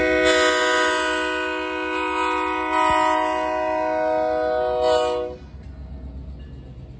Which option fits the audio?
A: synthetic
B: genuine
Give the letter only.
B